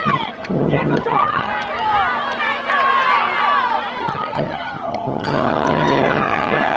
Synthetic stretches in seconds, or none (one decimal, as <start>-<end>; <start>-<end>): 0.0-1.5; 4.0-6.8